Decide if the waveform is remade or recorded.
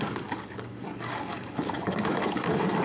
remade